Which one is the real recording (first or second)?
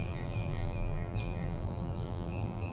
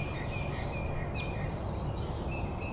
second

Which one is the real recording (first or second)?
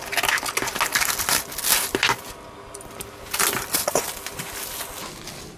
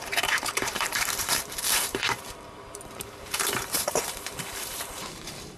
first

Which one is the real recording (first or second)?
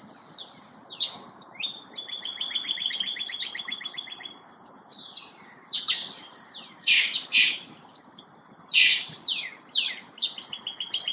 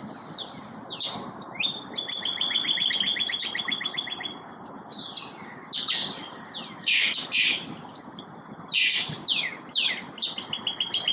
second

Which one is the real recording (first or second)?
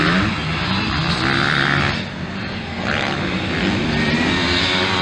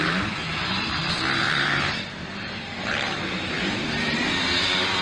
first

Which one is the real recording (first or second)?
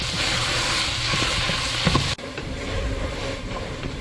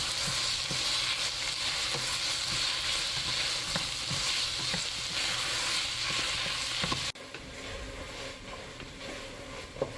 second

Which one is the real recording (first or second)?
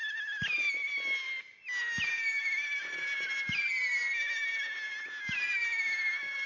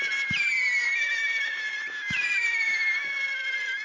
first